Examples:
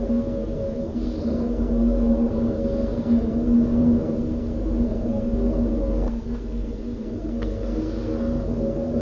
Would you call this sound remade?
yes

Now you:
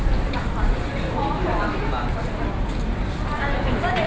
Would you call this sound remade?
no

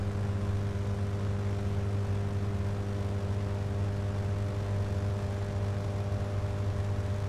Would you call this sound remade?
no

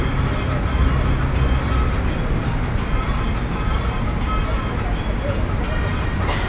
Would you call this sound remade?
no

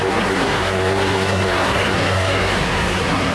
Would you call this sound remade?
yes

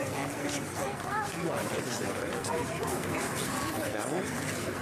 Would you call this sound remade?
yes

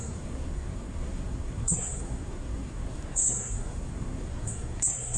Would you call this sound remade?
yes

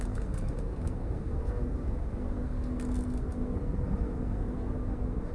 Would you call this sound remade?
yes